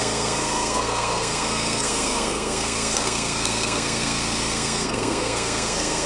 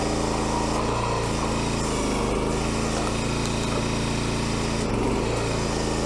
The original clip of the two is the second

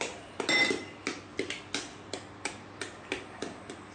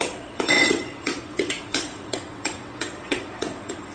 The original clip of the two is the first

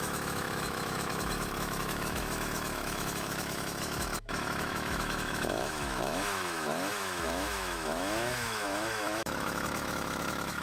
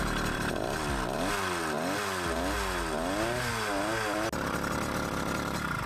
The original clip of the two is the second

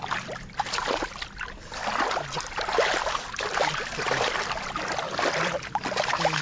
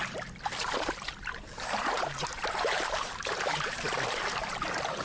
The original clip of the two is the first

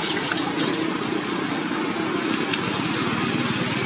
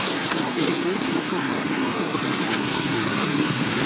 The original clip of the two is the first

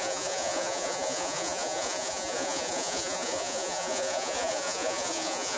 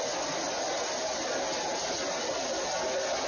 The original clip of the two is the second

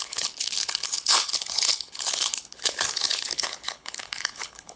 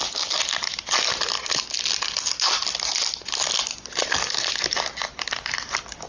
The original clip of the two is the second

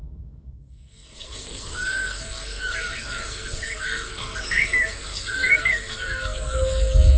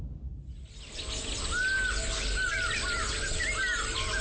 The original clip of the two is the second